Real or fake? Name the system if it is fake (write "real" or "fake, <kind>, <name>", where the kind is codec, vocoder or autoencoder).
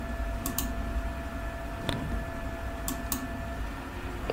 real